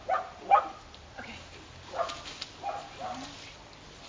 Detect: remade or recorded recorded